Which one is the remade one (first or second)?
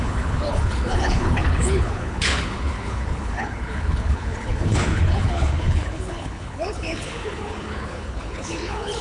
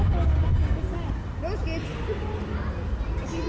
first